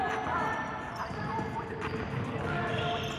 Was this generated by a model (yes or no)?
no